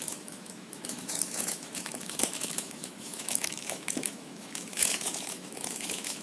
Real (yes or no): no